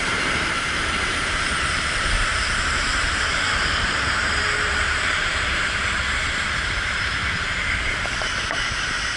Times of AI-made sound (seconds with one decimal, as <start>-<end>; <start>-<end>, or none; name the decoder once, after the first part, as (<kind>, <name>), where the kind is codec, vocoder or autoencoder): 0.0-7.2 (vocoder, BigVGAN v2); 7.8-9.2